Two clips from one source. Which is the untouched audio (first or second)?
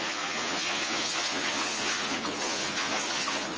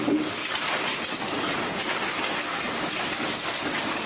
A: second